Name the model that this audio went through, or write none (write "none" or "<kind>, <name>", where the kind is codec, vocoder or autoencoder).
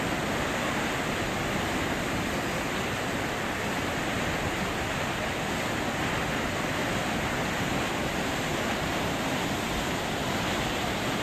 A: none